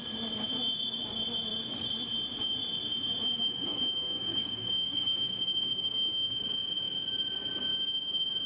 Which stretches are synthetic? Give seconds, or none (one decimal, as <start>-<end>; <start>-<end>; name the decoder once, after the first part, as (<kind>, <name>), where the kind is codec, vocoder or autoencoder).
3.7-6.4 (codec, DAC); 7.7-8.5